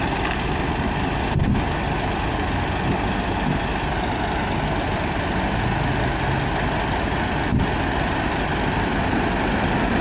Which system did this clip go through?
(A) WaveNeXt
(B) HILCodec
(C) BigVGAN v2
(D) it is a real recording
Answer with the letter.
D